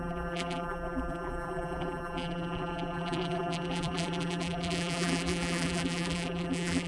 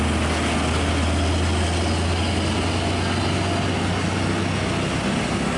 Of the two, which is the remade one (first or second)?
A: first